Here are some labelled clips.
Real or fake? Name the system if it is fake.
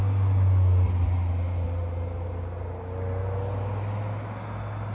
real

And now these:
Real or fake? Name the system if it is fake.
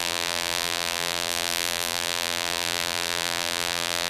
fake, vocoder, BigVGAN v2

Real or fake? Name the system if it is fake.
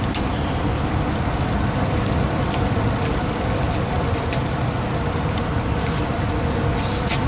real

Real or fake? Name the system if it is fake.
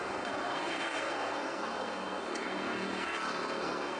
fake, codec, SNAC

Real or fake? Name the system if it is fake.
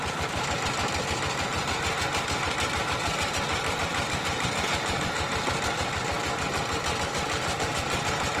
real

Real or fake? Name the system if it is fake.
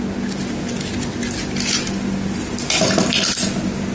real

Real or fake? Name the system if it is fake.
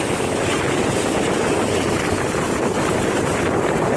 real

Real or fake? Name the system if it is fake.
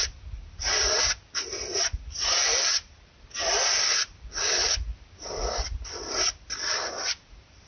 real